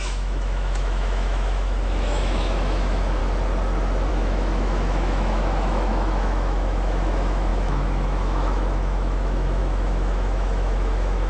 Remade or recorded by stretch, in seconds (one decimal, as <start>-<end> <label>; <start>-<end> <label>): 0.0-3.2 remade; 3.2-4.1 recorded; 4.1-11.3 remade